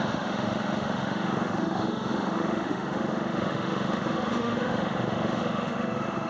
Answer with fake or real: fake